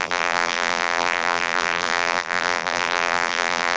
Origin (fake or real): fake